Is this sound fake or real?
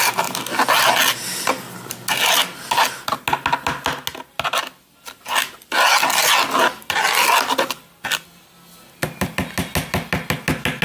real